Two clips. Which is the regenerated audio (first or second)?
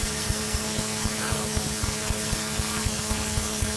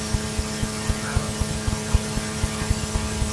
first